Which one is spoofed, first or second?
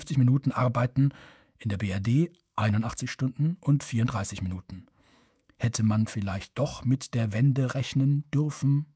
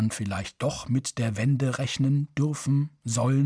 first